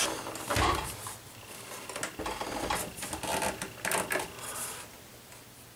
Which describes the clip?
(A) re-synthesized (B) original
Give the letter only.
B